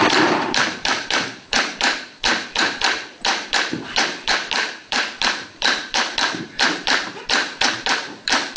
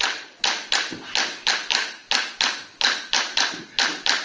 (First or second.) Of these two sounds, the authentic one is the second